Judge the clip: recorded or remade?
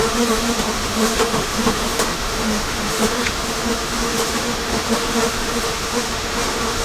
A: remade